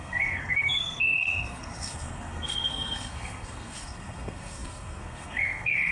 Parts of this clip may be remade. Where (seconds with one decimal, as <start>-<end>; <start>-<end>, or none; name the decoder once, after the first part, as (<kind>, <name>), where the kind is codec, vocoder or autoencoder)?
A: 0.0-5.9 (codec, SNAC)